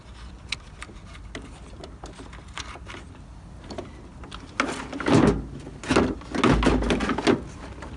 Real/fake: real